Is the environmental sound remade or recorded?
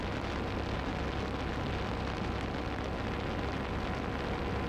recorded